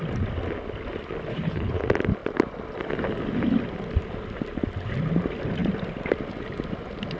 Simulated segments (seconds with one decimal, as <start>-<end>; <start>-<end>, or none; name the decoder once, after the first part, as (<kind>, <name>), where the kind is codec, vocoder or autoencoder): 1.3-1.8 (codec, HILCodec)